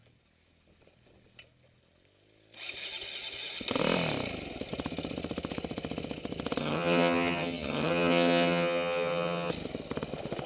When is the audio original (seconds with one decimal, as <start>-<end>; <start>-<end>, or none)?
0.0-6.6; 9.5-10.5